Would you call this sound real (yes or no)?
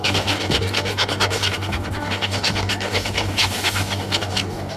no